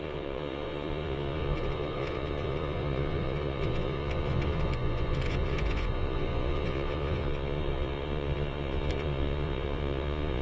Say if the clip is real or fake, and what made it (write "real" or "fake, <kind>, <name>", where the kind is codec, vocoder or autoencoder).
fake, vocoder, Vocos